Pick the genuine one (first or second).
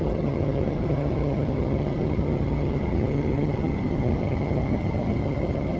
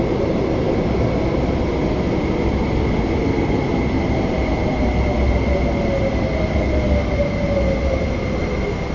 second